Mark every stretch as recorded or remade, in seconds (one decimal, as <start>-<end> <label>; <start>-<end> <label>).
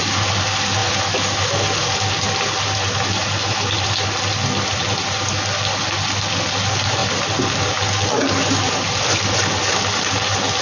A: 0.0-0.8 remade; 0.8-5.3 recorded; 5.3-7.0 remade; 7.0-10.6 recorded